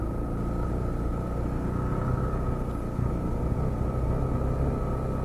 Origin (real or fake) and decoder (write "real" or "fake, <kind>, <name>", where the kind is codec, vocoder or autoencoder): real